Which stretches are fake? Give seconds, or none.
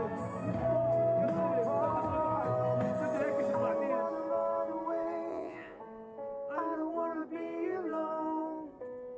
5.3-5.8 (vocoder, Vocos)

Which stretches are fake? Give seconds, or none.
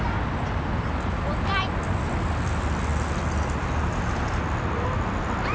none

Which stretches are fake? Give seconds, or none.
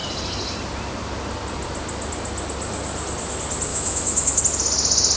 3.7-4.4 (autoencoder, DAC-VAE)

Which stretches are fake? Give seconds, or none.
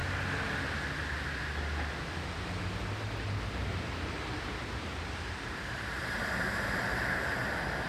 4.6-7.4 (vocoder, BigVGAN v2)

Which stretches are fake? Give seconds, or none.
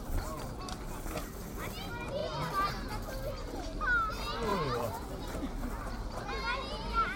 4.5-5.2 (vocoder, BigVGAN v2)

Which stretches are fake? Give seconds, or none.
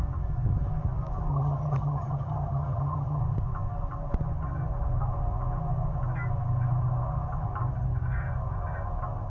1.3-3.2 (vocoder, HiFi-GAN)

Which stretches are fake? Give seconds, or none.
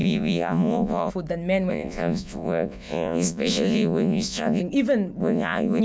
0.0-1.1 (vocoder, Vocos); 1.7-4.6; 5.2-5.8